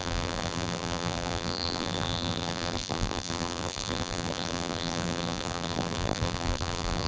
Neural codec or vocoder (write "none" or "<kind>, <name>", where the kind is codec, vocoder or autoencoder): vocoder, BigVGAN v2